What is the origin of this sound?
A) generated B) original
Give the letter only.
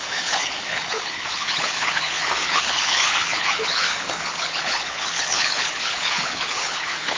A